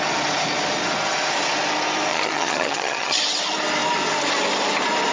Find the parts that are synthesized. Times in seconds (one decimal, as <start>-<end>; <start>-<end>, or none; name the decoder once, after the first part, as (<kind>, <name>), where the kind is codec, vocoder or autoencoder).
2.1-3.2 (vocoder, HiFi-GAN)